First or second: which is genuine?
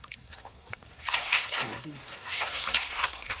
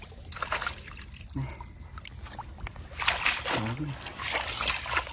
second